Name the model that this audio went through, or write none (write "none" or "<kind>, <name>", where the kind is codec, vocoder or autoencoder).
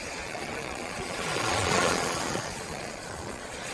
vocoder, Vocos